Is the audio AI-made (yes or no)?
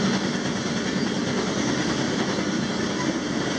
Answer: no